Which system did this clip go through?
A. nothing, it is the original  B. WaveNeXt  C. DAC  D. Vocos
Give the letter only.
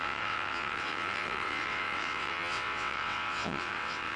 B